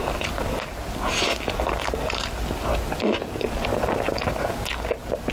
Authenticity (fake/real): real